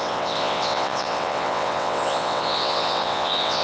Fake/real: fake